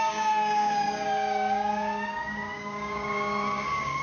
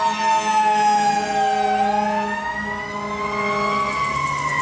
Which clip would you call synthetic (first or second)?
first